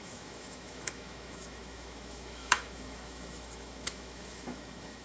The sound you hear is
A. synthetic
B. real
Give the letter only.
A